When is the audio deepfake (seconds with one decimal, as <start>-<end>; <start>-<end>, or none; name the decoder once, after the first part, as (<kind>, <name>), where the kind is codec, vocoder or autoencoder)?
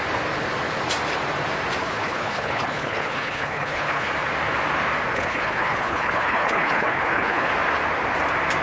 1.8-4.1 (codec, HILCodec); 5.1-7.5